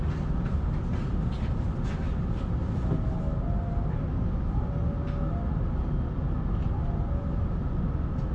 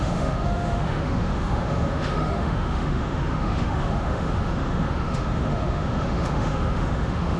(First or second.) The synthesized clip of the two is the second